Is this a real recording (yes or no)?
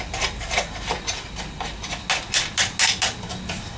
yes